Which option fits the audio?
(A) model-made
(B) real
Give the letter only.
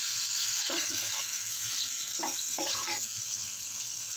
A